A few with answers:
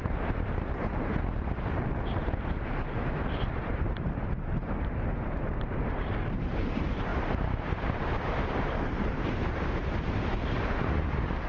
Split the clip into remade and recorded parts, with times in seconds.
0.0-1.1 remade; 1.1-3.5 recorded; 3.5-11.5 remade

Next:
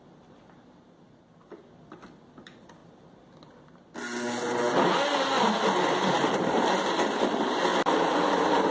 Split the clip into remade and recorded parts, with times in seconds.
0.0-7.7 recorded; 7.7-8.7 remade

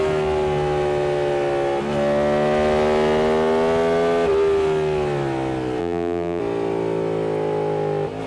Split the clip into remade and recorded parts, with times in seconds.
0.0-5.8 recorded; 5.8-6.4 remade; 6.4-8.3 recorded

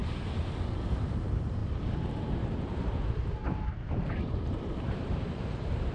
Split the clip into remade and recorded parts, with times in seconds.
0.0-1.0 recorded; 1.0-3.4 remade; 3.4-4.1 recorded; 4.1-5.9 remade

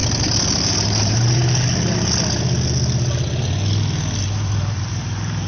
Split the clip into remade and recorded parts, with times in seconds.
0.0-0.7 recorded; 0.7-1.4 remade; 1.4-4.2 recorded; 4.2-5.5 remade

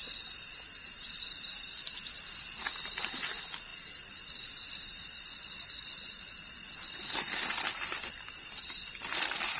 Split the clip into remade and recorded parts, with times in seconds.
0.0-9.6 remade

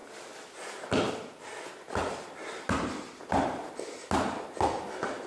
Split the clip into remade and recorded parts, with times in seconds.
0.0-1.1 remade; 1.1-2.0 recorded; 2.0-5.3 remade

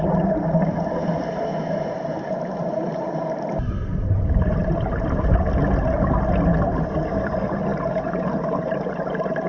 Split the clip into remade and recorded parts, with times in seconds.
0.0-7.7 recorded; 7.7-9.5 remade